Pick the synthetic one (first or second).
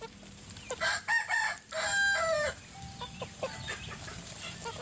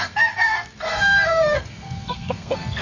second